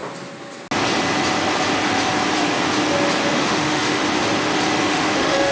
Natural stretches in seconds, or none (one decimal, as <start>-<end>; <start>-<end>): 0.0-3.3; 4.0-4.9